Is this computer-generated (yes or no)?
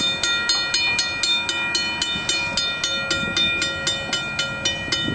no